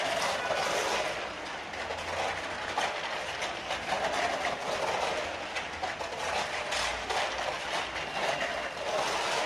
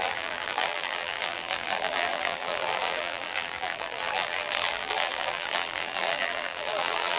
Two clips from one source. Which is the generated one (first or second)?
second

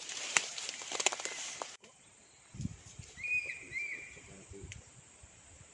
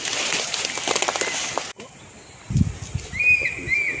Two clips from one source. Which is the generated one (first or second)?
first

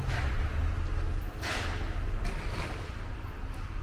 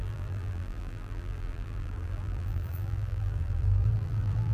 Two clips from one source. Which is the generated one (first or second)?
second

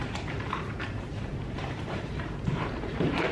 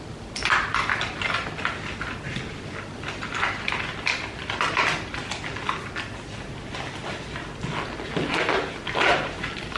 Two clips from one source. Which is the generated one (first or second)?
first